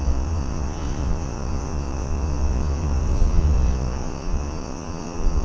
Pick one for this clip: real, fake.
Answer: fake